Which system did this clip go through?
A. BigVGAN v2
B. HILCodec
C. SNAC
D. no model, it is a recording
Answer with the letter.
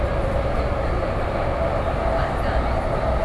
D